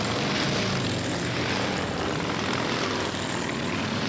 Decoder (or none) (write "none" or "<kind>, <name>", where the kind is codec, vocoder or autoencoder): none